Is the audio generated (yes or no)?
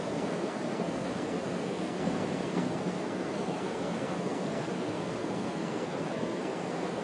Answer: yes